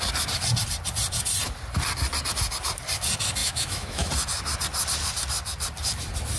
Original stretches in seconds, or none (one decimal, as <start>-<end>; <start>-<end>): 0.0-3.4; 4.1-6.4